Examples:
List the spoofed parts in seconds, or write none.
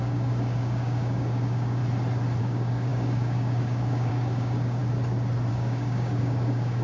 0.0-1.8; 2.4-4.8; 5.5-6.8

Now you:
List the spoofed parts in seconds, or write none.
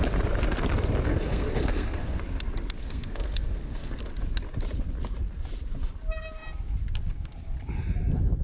1.1-2.2; 2.8-4.0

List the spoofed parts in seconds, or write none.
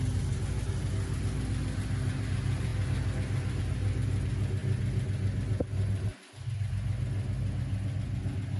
none